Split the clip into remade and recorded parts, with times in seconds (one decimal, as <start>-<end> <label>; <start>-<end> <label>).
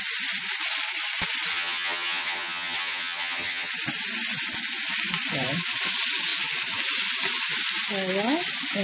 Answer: 0.0-1.5 recorded; 1.5-3.7 remade; 3.7-8.8 recorded